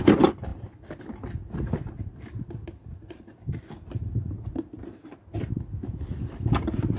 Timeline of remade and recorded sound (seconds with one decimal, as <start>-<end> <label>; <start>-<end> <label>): 0.0-7.0 recorded